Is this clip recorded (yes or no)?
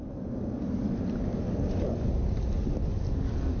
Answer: yes